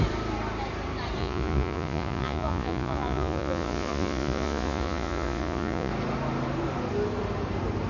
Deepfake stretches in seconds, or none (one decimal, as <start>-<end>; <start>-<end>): 1.2-5.9